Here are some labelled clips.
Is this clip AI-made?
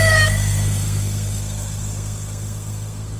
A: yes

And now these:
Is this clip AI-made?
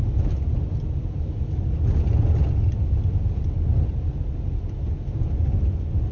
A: no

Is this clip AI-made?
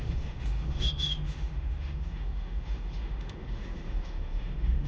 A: yes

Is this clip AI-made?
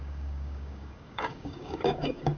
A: yes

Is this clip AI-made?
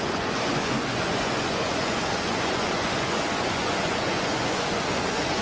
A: yes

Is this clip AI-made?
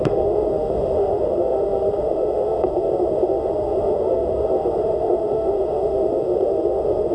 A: yes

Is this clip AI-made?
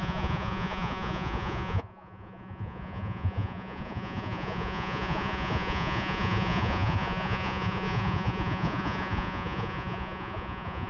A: yes